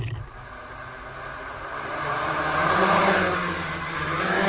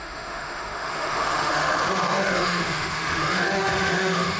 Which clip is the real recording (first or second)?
first